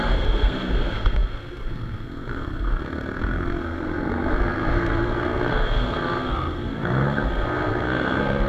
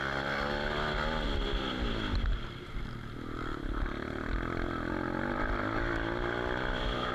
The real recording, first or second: second